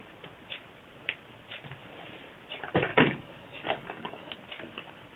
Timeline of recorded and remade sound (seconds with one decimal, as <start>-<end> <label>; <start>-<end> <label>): 0.0-2.9 recorded; 2.9-4.3 remade; 4.3-5.2 recorded